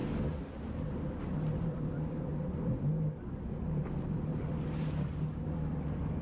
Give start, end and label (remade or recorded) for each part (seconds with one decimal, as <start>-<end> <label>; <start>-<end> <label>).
0.0-1.2 recorded; 1.2-2.3 remade; 2.3-6.2 recorded